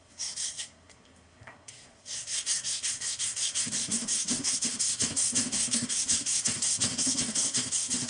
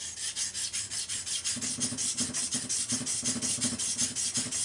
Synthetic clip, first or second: first